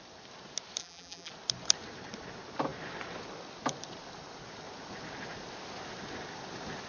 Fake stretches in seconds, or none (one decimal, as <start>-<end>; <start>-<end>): 0.8-1.3